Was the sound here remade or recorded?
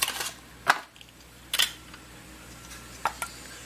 recorded